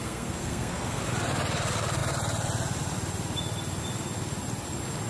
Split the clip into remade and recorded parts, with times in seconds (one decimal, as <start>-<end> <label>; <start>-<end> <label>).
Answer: 0.0-1.0 remade; 1.0-5.1 recorded